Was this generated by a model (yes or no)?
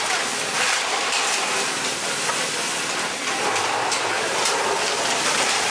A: yes